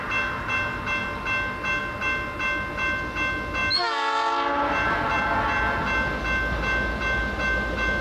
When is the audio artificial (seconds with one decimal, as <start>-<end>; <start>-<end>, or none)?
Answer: none

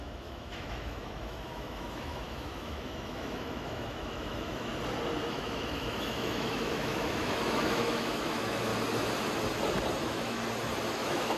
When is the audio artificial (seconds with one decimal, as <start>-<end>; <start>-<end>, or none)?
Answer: 0.0-4.7; 5.3-8.7; 10.0-10.4; 10.9-11.4